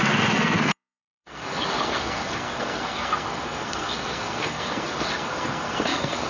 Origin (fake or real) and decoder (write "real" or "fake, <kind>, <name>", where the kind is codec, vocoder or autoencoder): fake, codec, SNAC